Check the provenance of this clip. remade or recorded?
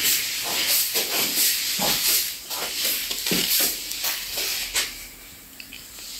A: recorded